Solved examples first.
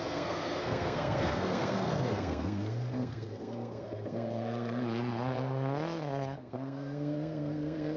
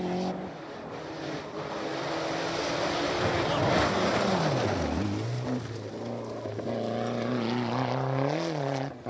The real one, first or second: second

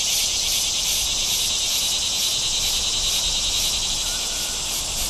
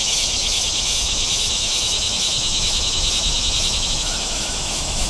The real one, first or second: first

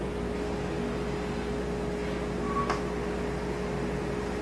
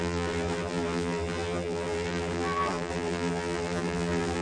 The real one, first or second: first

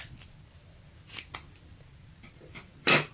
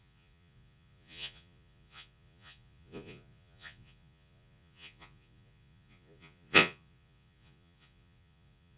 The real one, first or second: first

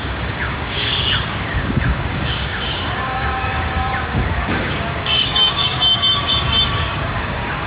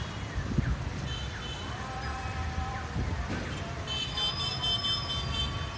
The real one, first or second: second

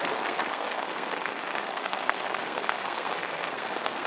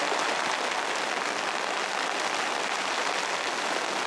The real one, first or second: second